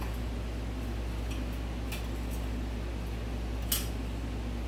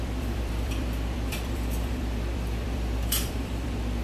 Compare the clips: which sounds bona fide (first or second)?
first